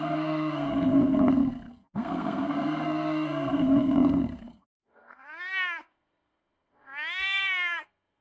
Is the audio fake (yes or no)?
yes